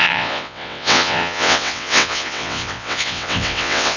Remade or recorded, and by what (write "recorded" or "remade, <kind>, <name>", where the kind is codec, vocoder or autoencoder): remade, vocoder, WaveNeXt